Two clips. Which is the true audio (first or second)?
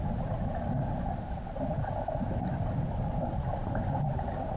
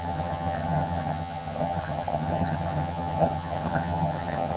first